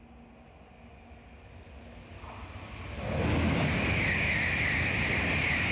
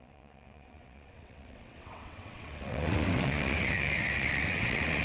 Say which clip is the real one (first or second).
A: first